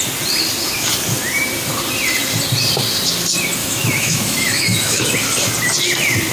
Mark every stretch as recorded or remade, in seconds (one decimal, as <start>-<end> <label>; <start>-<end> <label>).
0.0-3.6 recorded; 3.6-5.1 remade; 5.1-6.3 recorded

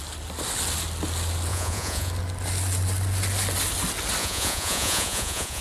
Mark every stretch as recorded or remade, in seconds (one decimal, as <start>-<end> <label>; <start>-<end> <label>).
0.0-1.5 recorded; 1.5-2.1 remade; 2.1-4.2 recorded; 4.2-5.6 remade

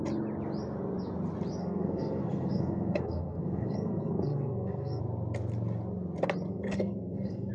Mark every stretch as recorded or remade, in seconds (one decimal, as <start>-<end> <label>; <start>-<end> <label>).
0.0-1.6 recorded; 1.6-5.0 remade; 5.0-6.5 recorded; 6.5-7.5 remade

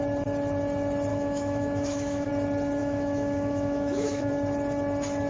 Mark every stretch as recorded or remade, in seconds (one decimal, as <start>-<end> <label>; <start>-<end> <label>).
0.0-1.1 recorded; 1.1-2.3 remade; 2.3-2.8 recorded; 2.8-4.3 remade; 4.3-5.3 recorded